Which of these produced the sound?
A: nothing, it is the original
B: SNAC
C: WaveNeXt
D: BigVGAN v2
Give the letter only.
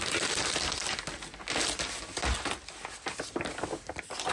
A